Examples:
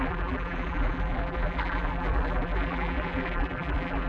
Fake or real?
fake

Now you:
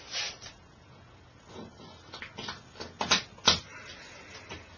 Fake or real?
real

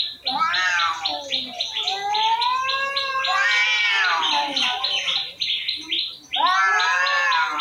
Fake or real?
real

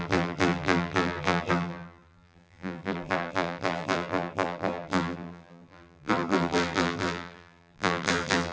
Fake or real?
fake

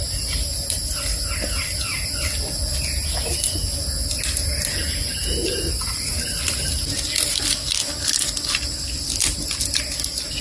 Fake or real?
real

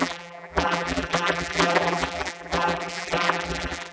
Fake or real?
fake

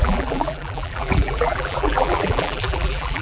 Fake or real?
fake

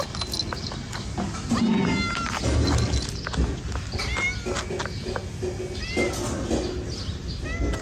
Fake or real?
real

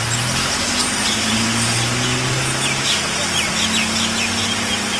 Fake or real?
real